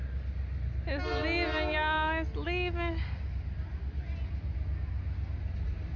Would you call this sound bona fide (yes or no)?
yes